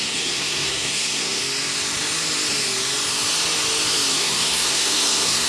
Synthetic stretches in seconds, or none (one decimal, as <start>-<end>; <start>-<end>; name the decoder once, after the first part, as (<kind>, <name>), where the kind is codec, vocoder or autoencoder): 0.0-1.4 (codec, SNAC); 4.1-5.5